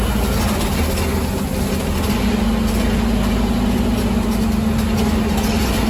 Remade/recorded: recorded